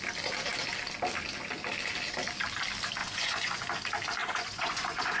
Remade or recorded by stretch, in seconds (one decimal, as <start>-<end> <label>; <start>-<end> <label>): 0.0-3.0 recorded; 3.0-3.7 remade; 3.7-4.2 recorded; 4.2-5.2 remade